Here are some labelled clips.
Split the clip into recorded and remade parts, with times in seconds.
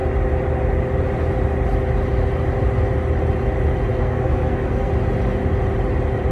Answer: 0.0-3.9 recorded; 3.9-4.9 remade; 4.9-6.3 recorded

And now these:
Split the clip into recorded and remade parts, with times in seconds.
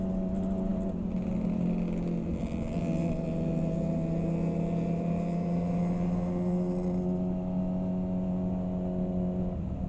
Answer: 0.0-9.9 recorded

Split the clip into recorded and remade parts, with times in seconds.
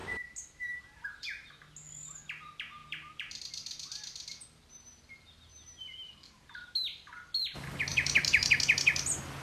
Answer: 0.0-1.5 remade; 1.5-2.8 recorded; 2.8-3.4 remade; 3.4-5.5 recorded; 5.5-6.1 remade; 6.1-7.9 recorded; 7.9-8.5 remade; 8.5-9.4 recorded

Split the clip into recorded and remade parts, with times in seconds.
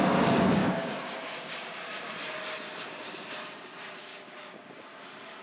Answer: 0.0-0.6 recorded; 0.6-2.1 remade; 2.1-4.1 recorded; 4.1-5.0 remade; 5.0-5.4 recorded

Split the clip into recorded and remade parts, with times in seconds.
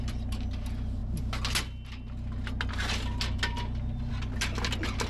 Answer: 0.0-5.1 recorded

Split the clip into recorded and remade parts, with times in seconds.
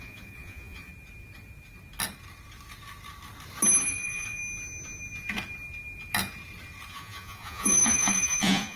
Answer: 0.0-0.9 remade; 0.9-3.9 recorded; 3.9-4.4 remade; 4.4-6.9 recorded; 6.9-8.8 remade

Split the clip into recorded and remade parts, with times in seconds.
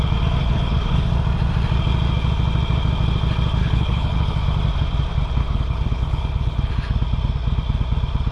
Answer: 0.0-0.4 recorded; 0.4-1.1 remade; 1.1-3.6 recorded; 3.6-4.4 remade; 4.4-5.4 recorded; 5.4-6.7 remade; 6.7-8.3 recorded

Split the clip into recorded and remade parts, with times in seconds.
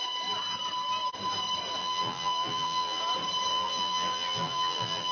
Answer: 0.0-1.8 recorded; 1.8-3.0 remade; 3.0-3.5 recorded; 3.5-5.1 remade